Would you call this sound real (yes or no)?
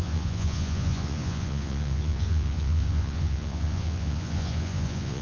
no